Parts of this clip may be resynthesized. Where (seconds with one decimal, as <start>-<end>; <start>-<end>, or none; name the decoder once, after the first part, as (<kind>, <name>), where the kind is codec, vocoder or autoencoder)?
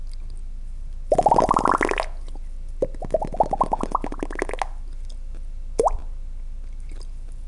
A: none